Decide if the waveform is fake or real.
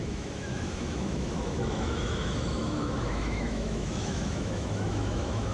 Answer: fake